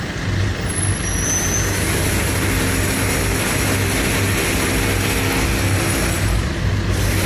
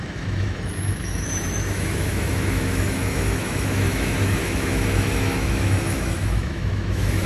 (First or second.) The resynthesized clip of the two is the second